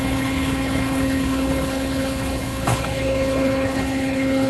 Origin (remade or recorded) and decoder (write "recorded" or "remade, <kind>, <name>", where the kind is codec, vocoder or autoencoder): remade, codec, HILCodec